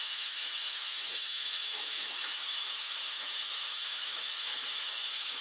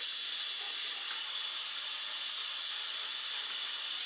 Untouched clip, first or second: second